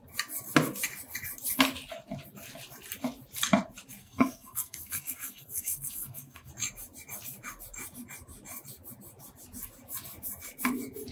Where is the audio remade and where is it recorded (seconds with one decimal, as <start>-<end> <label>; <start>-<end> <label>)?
0.0-4.0 recorded; 4.0-6.5 remade; 6.5-11.1 recorded